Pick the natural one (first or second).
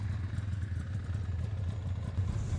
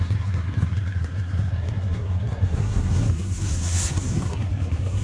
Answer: first